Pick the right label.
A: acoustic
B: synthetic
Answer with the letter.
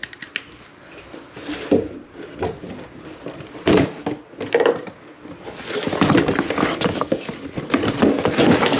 A